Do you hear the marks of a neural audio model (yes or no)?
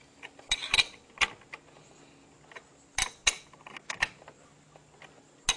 no